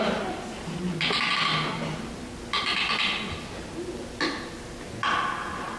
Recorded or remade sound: recorded